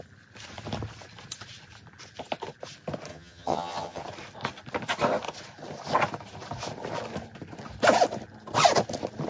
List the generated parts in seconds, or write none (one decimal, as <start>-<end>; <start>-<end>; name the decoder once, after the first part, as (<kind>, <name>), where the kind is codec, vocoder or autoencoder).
3.1-4.0 (vocoder, HiFi-GAN)

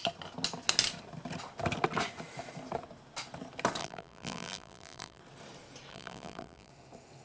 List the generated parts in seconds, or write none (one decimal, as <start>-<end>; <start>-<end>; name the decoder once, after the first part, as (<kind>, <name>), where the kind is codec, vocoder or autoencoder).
3.8-5.2 (vocoder, BigVGAN v2); 5.9-6.7

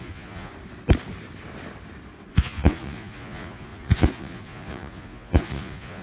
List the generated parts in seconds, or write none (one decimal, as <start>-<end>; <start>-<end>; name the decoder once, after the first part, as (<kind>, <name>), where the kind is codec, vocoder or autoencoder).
0.0-0.5 (vocoder, Vocos); 2.3-6.0